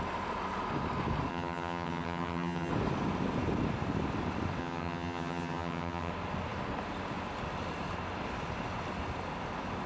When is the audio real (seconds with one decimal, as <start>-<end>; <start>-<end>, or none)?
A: 0.0-1.3; 2.7-4.6; 6.1-9.9